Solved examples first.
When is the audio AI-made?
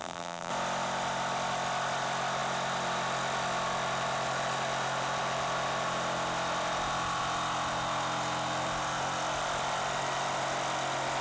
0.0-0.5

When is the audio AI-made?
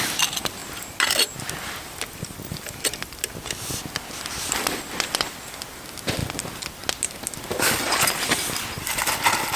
none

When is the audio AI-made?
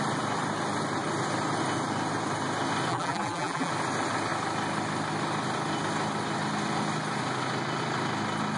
2.9-3.7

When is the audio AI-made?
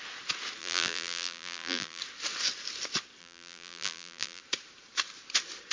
0.6-2.0; 3.2-4.4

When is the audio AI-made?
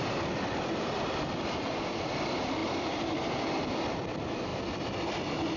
2.6-3.7; 4.5-5.6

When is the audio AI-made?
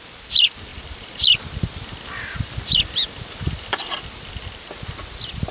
0.7-4.0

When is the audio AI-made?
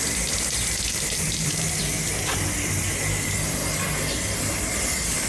0.0-3.6; 4.4-5.3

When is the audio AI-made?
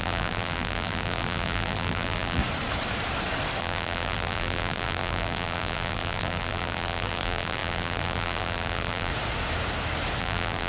0.0-2.4; 3.6-9.1; 10.2-10.7